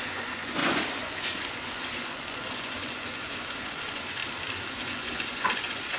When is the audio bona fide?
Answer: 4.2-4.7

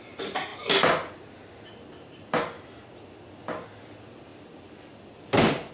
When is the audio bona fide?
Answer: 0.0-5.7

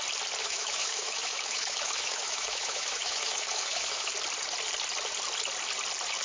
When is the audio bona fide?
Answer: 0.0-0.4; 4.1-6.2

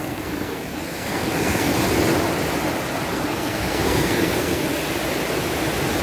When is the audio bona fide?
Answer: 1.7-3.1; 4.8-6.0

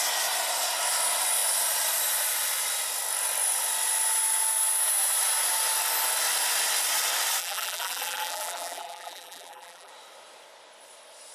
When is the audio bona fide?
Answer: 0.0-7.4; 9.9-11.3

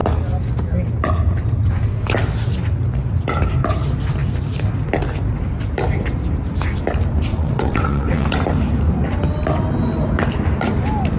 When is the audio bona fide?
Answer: 0.0-7.3; 8.3-11.2

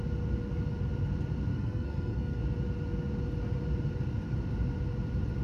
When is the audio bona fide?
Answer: 0.0-1.5; 2.4-5.4

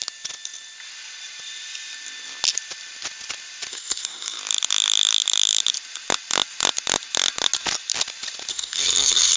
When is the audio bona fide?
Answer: 0.0-3.7; 4.4-8.5